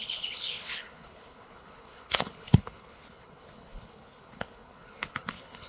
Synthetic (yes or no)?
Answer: yes